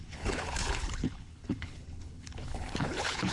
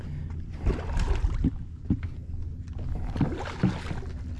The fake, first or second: first